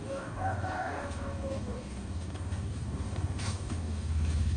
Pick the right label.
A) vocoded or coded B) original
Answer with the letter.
A